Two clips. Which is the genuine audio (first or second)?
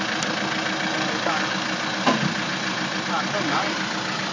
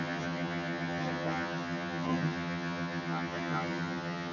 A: first